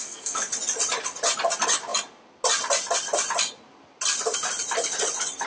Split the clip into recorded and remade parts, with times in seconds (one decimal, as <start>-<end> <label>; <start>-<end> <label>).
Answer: 0.0-0.5 remade; 0.5-5.5 recorded